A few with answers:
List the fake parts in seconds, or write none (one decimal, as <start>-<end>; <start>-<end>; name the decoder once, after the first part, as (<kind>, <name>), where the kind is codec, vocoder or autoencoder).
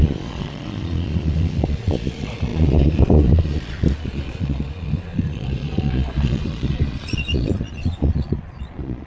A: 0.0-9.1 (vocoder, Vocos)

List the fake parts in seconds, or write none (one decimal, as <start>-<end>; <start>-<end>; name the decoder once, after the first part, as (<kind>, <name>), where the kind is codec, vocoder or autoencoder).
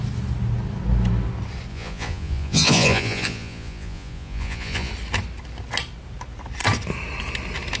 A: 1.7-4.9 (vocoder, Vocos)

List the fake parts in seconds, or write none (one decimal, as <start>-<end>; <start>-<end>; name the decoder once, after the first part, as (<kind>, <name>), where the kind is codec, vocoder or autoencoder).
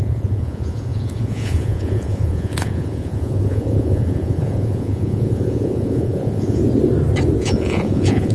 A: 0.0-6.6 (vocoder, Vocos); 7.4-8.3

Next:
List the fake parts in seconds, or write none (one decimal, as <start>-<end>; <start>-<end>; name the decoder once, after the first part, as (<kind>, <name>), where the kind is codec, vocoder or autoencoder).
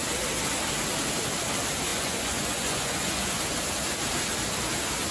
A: 1.9-3.4 (vocoder, Vocos)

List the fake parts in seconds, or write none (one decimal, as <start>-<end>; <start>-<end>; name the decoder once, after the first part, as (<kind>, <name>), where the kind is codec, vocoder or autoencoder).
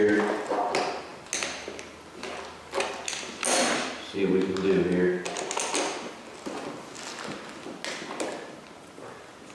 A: none